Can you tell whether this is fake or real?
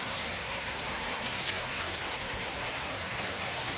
fake